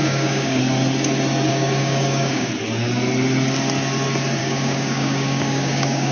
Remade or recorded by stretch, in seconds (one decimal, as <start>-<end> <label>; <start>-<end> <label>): 0.0-0.6 remade; 0.6-1.5 recorded; 1.5-2.5 remade; 2.5-4.4 recorded; 4.4-6.1 remade